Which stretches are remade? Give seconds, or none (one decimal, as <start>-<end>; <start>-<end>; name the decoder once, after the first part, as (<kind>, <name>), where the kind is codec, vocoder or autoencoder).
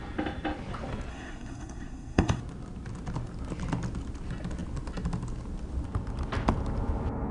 1.1-2.4 (codec, SNAC)